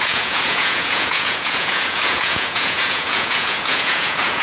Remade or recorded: remade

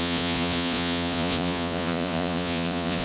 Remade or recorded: remade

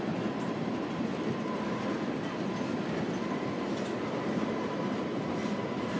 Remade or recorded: recorded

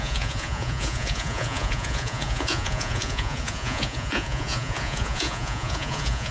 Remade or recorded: remade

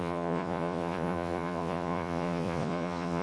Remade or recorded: remade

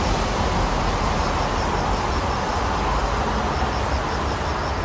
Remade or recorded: recorded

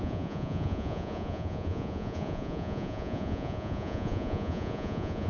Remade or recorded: remade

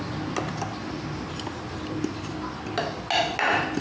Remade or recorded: recorded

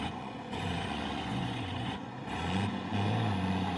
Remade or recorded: remade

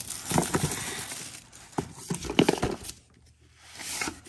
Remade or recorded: recorded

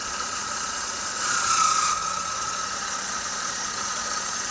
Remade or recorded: remade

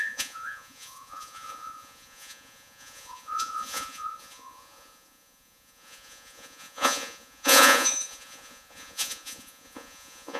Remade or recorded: remade